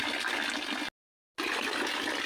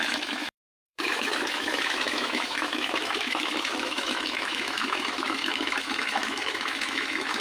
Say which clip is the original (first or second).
first